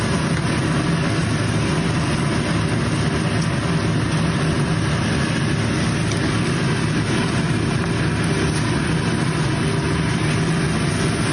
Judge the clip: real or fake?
real